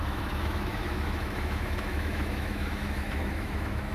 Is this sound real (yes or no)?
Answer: no